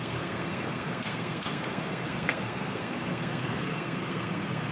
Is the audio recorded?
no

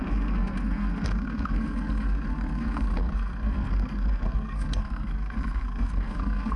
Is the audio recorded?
no